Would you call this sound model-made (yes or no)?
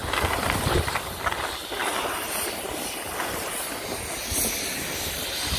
no